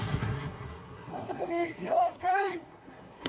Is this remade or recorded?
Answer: remade